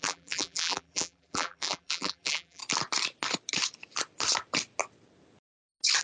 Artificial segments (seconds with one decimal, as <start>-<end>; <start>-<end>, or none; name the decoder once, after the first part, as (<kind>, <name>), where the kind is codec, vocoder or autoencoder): 0.0-2.6 (vocoder, BigVGAN v2)